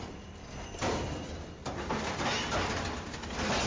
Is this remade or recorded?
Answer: recorded